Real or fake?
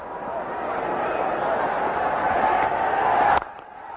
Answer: real